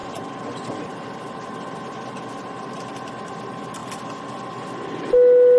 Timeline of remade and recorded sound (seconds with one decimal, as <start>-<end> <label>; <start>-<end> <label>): 0.0-5.6 recorded